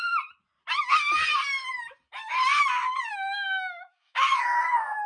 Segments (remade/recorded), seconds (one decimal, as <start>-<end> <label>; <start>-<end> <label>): 0.0-3.1 recorded; 3.1-4.4 remade; 4.4-5.1 recorded